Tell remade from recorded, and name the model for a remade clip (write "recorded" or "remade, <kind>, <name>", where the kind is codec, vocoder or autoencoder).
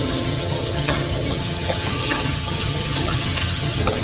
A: remade, vocoder, HiFi-GAN